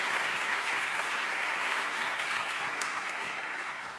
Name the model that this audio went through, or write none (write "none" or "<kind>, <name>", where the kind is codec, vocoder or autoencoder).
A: codec, SNAC